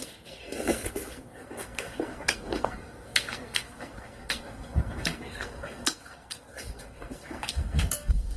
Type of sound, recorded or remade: remade